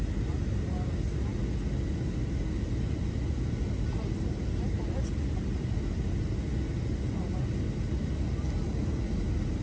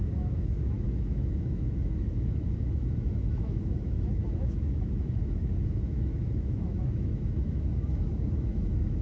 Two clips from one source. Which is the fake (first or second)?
second